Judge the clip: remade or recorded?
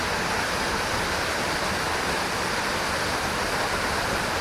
recorded